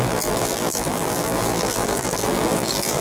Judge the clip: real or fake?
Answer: fake